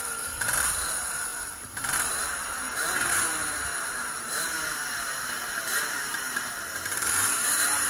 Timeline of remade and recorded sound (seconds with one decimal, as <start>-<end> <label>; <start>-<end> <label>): 0.0-7.9 remade